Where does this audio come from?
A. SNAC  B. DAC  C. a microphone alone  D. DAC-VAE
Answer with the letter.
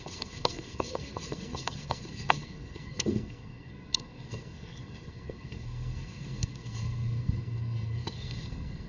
A